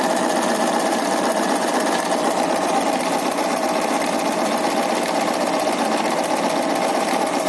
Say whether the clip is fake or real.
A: fake